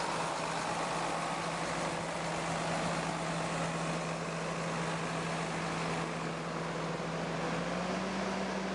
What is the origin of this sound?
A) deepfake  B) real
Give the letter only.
B